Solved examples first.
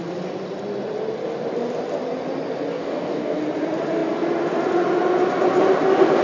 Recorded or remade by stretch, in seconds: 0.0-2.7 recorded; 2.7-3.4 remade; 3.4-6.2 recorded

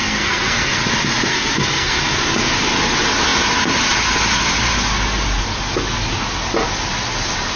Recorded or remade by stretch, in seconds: 0.0-0.8 remade; 0.8-1.3 recorded; 1.3-2.0 remade; 2.0-7.6 recorded

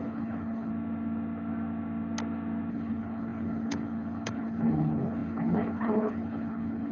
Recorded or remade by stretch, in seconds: 0.0-0.7 remade; 0.7-2.7 recorded; 2.7-6.9 remade